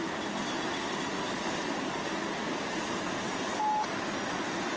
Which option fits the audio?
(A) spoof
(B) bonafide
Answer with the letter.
B